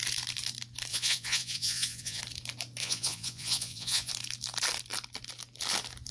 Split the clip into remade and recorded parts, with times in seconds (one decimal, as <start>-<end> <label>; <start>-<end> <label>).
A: 0.0-0.9 recorded; 0.9-2.2 remade; 2.2-2.8 recorded; 2.8-4.1 remade; 4.1-6.1 recorded